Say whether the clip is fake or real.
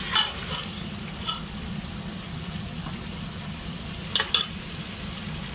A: real